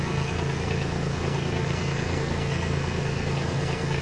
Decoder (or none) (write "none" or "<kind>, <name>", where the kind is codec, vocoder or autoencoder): codec, SNAC